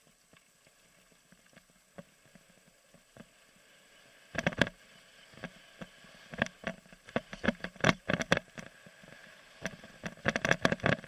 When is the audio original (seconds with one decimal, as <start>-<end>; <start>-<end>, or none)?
0.0-6.7; 8.0-9.2; 9.8-11.1